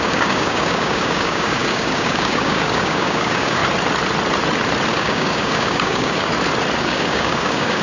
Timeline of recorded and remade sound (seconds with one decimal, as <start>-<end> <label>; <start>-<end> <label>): 0.0-3.6 remade; 3.6-4.9 recorded; 4.9-6.3 remade; 6.3-6.8 recorded; 6.8-7.8 remade